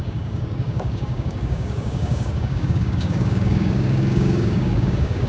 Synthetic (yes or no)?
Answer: yes